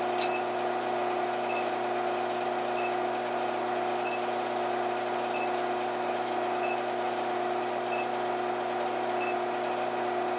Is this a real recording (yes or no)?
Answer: yes